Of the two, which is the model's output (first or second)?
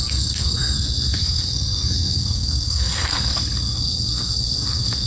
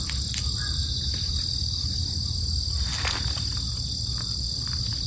first